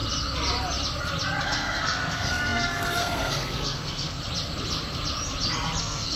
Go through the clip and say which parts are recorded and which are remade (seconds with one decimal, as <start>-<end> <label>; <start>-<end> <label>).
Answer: 0.0-1.4 recorded; 1.4-4.2 remade; 4.2-5.8 recorded; 5.8-6.2 remade